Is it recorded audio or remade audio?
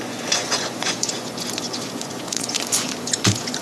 remade